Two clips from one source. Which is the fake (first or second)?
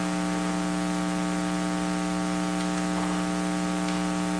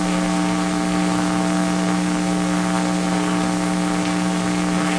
second